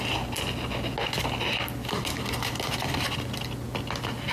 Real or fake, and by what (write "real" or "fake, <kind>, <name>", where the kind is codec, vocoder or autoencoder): real